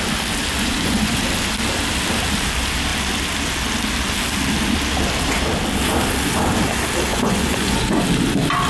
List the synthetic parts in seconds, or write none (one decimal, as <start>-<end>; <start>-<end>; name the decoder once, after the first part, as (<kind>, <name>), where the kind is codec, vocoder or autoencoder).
0.5-1.2 (vocoder, Vocos); 7.1-8.0